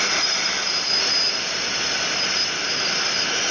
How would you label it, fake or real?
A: real